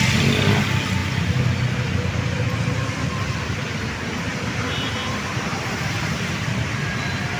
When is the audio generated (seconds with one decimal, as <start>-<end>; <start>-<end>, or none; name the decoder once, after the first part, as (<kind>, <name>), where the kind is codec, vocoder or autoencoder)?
4.3-6.6 (vocoder, BigVGAN v2)